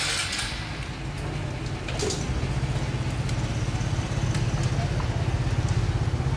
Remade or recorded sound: recorded